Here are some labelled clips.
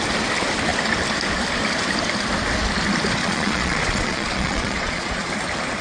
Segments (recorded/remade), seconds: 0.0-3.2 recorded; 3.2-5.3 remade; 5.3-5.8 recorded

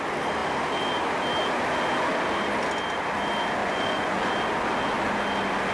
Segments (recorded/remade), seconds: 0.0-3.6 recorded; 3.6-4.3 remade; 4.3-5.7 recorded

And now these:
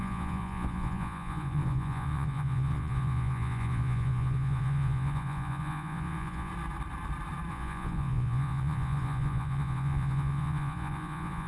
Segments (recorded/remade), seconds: 0.0-6.5 remade; 6.5-7.5 recorded; 7.5-11.5 remade

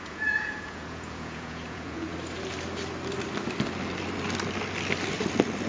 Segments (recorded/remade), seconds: 0.0-2.1 remade; 2.1-5.7 recorded

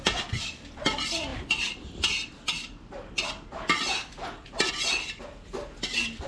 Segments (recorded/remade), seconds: 0.0-6.3 recorded